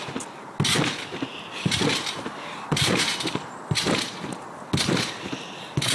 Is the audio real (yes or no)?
yes